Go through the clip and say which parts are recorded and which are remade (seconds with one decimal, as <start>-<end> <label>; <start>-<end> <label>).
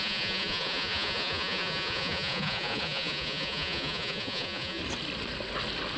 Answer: 0.0-4.8 remade; 4.8-6.0 recorded